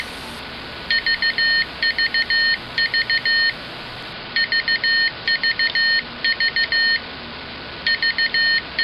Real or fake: real